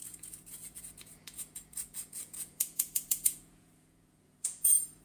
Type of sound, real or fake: fake